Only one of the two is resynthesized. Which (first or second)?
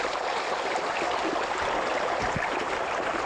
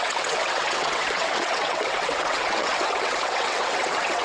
second